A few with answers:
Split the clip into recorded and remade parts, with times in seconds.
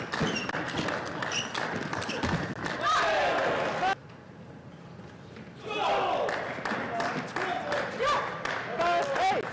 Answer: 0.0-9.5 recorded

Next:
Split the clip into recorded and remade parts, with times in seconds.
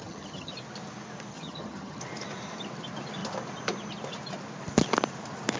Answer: 0.0-0.5 remade; 0.5-1.3 recorded; 1.3-2.0 remade; 2.0-5.6 recorded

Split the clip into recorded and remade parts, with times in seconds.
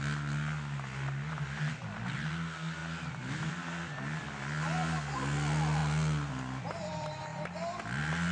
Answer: 0.0-8.3 recorded